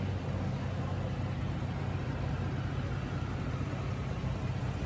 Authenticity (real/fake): real